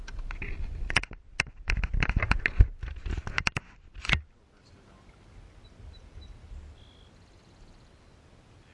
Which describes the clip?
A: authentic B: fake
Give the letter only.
A